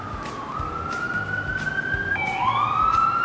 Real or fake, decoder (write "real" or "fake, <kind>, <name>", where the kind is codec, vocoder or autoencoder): real